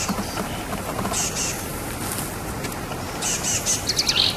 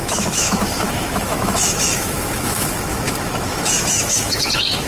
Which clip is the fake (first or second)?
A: second